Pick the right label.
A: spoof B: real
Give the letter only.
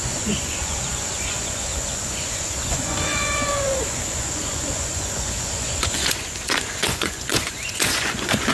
A